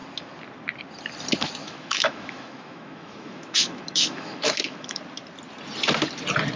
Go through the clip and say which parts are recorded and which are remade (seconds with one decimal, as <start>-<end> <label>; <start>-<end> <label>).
0.0-1.6 recorded; 1.6-5.0 remade; 5.0-6.6 recorded